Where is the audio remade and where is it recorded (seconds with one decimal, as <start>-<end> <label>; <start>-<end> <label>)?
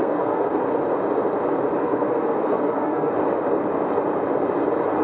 0.0-0.6 remade; 0.6-1.8 recorded; 1.8-3.1 remade; 3.1-5.0 recorded